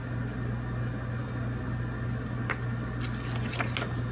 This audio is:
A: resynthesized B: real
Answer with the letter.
B